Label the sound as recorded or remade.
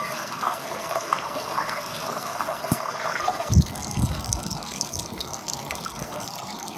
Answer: remade